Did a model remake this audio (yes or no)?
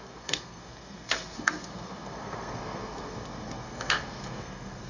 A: yes